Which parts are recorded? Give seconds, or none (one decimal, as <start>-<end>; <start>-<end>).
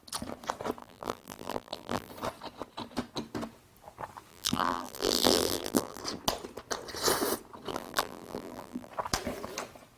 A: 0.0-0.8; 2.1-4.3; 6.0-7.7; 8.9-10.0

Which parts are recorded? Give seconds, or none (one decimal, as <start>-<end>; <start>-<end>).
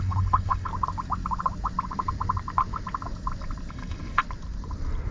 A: 0.7-3.7; 4.2-5.1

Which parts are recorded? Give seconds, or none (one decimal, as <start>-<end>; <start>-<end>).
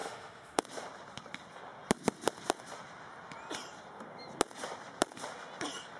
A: 0.6-6.0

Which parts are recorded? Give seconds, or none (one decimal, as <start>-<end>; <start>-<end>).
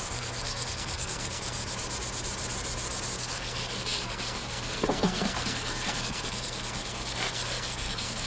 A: 1.6-3.2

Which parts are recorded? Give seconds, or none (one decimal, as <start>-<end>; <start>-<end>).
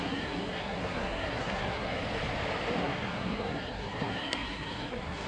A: 2.0-2.8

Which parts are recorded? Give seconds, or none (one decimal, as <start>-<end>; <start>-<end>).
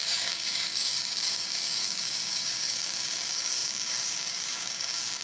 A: none